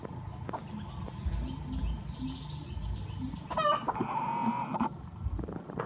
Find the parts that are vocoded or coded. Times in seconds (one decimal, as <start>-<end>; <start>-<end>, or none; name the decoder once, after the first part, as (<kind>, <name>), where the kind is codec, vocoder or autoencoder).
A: none

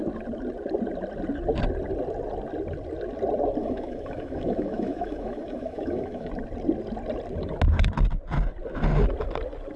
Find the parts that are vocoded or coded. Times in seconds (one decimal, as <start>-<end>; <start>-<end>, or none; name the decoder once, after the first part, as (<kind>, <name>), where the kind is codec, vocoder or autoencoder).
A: 3.6-6.3 (autoencoder, DAC-VAE)

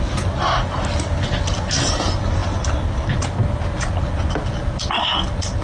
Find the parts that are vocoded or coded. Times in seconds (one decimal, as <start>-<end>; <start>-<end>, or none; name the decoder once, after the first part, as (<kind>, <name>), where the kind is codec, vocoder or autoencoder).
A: none

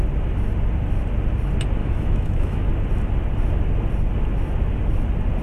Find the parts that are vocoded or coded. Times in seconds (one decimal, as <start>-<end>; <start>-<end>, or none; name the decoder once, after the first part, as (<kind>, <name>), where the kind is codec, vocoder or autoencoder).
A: 1.8-2.7 (autoencoder, DAC-VAE)

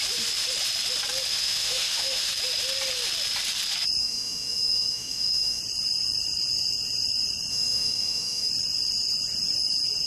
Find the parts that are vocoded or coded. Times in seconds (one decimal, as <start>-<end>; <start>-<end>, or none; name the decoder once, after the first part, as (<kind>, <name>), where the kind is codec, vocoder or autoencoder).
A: 1.3-2.3 (autoencoder, DAC-VAE); 4.0-5.6; 7.5-8.5

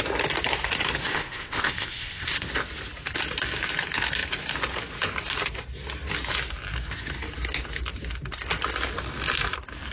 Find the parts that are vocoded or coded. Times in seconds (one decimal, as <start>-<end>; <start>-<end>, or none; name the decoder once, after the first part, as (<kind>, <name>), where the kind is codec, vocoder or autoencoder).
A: 1.0-2.5 (codec, ZipCodec)